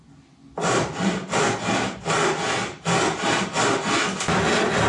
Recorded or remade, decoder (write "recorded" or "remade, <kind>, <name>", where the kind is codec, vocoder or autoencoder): recorded